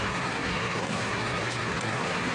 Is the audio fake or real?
fake